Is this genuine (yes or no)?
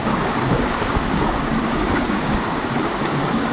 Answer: no